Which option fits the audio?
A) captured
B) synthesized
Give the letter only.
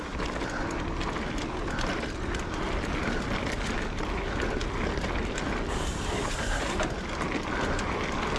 A